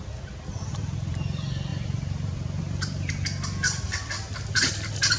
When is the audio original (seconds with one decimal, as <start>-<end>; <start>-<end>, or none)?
0.0-1.7; 3.1-5.2